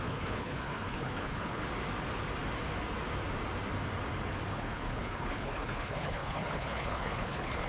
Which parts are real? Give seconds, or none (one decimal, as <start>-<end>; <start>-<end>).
1.6-4.5